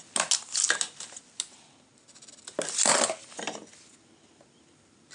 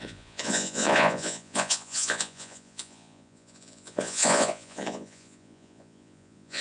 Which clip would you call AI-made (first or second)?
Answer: second